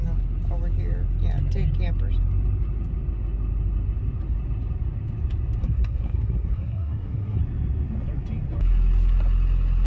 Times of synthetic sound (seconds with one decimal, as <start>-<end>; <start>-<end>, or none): 5.6-7.4